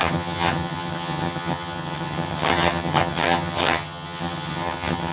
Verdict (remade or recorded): remade